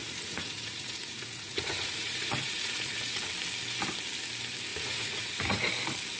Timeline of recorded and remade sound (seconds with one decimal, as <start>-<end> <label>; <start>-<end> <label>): 0.0-3.3 remade; 3.3-4.7 recorded; 4.7-5.7 remade; 5.7-6.2 recorded